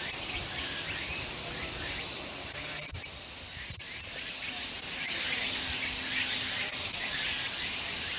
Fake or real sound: real